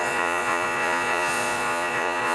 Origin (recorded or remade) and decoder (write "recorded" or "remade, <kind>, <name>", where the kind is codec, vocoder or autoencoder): remade, vocoder, Vocos